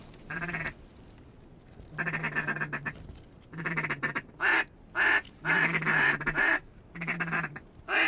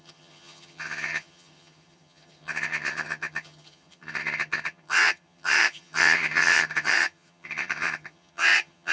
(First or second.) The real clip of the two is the first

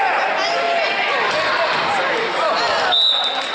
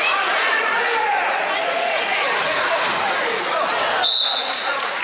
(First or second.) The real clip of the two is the first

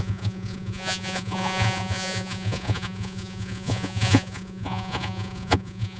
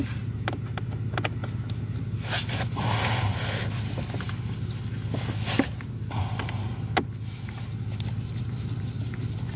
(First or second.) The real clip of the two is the second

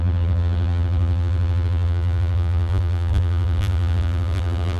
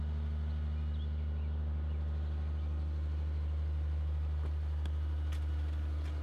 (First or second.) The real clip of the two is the second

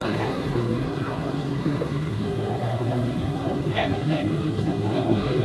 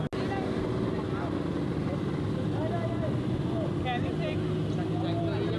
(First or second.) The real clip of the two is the second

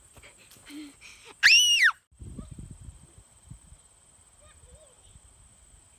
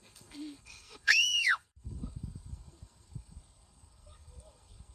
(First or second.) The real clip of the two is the first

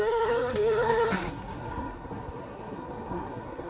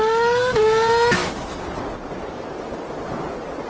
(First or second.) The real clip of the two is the second